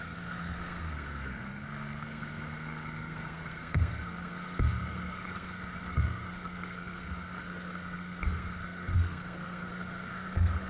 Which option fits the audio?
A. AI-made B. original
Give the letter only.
A